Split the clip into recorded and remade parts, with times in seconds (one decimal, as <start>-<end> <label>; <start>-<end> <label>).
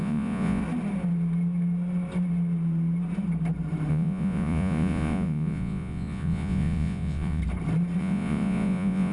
0.0-0.6 remade; 0.6-3.9 recorded; 3.9-7.4 remade; 7.4-8.0 recorded; 8.0-9.1 remade